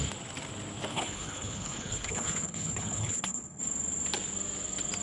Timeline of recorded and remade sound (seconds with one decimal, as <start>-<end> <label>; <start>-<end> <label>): 0.0-0.9 recorded; 0.9-3.6 remade; 3.6-5.0 recorded